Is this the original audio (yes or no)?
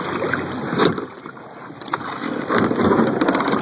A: yes